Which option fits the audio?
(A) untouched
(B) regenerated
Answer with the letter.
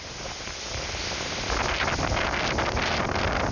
A